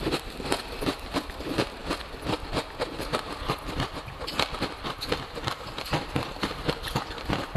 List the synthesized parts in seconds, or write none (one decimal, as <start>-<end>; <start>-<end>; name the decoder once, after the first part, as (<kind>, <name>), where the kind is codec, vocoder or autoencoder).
none